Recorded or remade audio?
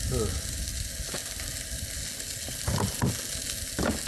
recorded